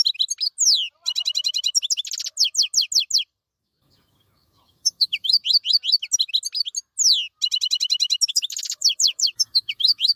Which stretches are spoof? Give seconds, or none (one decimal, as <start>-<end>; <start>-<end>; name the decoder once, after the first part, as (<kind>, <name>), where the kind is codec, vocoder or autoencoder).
3.6-5.4 (autoencoder, DAC-VAE); 8.3-10.2

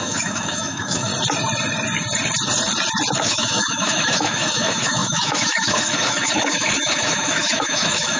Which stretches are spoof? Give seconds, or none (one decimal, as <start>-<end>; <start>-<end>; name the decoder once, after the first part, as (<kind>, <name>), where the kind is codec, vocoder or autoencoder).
0.0-1.1 (autoencoder, DAC-VAE); 3.2-8.2